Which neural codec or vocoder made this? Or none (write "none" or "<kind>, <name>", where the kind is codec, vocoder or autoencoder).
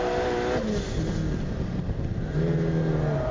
none